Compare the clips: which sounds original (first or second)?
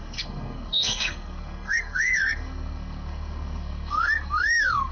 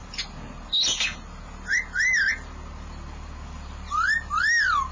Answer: second